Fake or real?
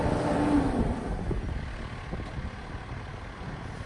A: real